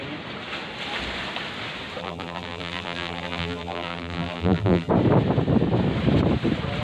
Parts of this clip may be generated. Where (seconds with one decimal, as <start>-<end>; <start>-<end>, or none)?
2.0-4.9